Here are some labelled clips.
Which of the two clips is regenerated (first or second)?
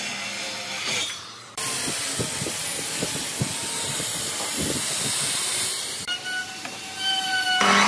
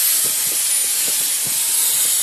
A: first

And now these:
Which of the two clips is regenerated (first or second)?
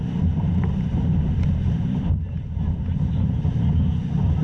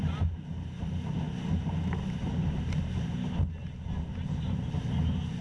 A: first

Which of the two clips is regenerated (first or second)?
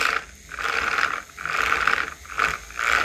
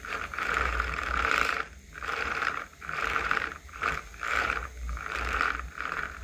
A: second